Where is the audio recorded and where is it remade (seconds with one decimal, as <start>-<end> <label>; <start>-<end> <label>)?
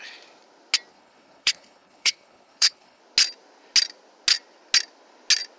0.0-0.9 recorded; 0.9-3.0 remade; 3.0-5.6 recorded